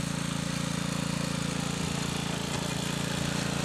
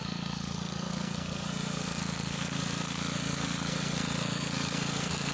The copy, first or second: second